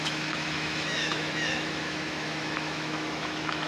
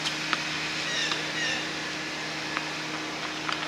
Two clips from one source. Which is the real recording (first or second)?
second